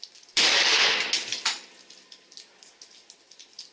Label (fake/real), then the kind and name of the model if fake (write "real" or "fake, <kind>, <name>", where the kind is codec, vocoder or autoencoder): real